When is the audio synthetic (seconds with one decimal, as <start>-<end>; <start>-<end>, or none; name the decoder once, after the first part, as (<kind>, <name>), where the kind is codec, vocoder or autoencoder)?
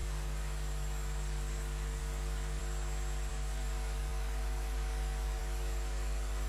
0.0-2.6 (codec, DAC); 3.3-6.5